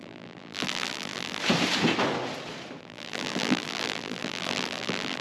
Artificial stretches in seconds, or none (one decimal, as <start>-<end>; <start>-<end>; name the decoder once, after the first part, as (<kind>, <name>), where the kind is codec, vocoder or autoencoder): 0.0-1.4 (vocoder, BigVGAN v2); 2.8-5.2